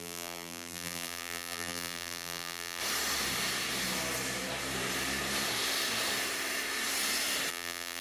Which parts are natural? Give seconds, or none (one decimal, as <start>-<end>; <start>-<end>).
2.8-7.5